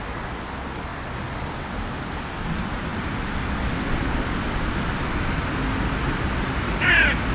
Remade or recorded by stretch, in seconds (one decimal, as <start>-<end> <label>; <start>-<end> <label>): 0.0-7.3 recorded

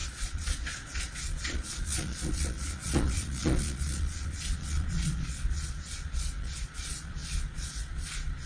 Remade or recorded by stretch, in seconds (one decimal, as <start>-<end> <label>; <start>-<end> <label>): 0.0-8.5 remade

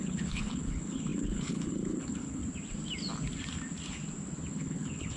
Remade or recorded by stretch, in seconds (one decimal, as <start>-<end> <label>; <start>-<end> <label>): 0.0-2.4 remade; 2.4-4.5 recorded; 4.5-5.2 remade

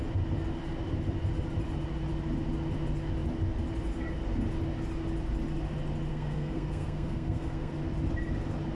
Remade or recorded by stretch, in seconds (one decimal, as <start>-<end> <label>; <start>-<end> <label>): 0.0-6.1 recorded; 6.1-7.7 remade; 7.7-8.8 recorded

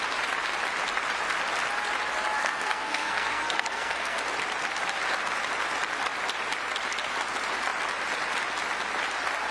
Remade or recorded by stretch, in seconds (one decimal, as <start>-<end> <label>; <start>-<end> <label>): 0.0-2.4 recorded; 2.4-4.2 remade; 4.2-9.5 recorded

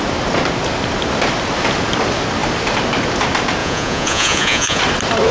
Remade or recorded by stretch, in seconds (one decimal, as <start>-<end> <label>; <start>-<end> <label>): 0.0-3.6 recorded; 3.6-4.8 remade; 4.8-5.3 recorded